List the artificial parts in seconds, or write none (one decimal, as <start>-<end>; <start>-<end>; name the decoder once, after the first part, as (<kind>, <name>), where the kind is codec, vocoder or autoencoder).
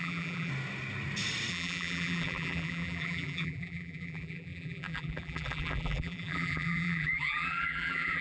0.0-0.5 (vocoder, BigVGAN v2); 1.5-8.2